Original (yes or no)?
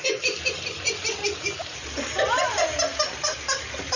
yes